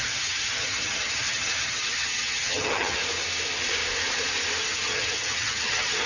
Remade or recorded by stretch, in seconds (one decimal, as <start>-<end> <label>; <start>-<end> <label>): 0.0-3.0 remade; 3.0-4.6 recorded; 4.6-6.1 remade